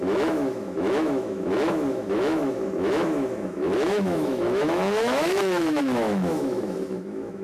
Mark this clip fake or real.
fake